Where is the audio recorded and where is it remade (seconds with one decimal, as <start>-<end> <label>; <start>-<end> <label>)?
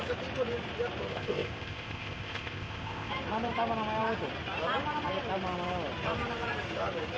0.0-1.1 recorded; 1.1-3.1 remade; 3.1-7.2 recorded